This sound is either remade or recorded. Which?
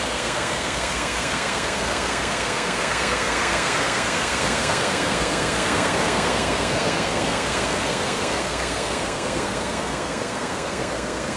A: remade